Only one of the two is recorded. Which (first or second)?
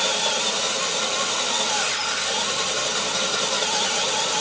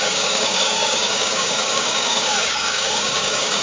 first